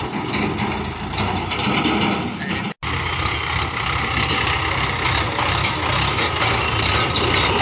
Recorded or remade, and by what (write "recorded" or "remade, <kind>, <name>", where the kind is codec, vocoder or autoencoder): recorded